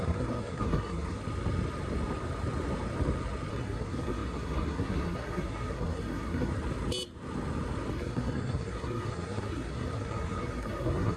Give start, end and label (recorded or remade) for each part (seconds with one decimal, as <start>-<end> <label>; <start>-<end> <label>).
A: 0.0-1.2 remade; 1.2-3.5 recorded; 3.5-6.5 remade; 6.5-7.9 recorded; 7.9-11.2 remade